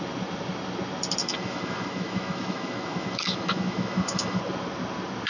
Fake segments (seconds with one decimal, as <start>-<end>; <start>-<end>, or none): 1.2-4.4